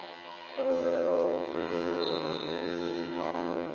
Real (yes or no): no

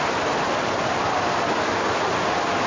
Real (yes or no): yes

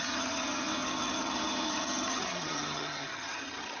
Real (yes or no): no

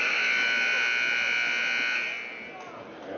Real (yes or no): yes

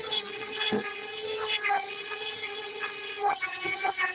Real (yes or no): no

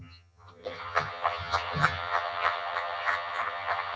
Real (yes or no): no